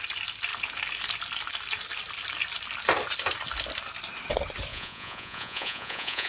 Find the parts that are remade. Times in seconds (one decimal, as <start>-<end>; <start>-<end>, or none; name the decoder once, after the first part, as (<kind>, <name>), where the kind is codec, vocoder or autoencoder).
4.7-6.3 (vocoder, Vocos)